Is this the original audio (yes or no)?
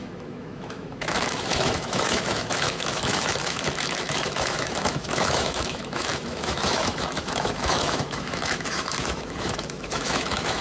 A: no